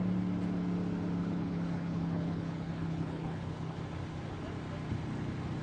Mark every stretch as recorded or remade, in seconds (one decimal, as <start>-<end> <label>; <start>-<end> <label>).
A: 0.0-1.2 recorded; 1.2-3.8 remade; 3.8-5.6 recorded